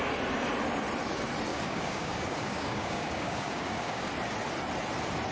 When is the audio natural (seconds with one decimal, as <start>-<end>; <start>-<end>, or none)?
0.0-1.5; 4.1-5.3